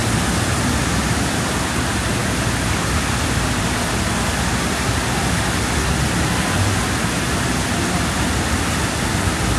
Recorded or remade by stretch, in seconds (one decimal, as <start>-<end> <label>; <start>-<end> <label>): 0.0-9.6 recorded